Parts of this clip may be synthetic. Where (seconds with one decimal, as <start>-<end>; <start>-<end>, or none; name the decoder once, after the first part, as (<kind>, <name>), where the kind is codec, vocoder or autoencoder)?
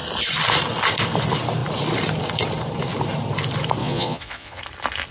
3.8-4.6 (vocoder, Vocos)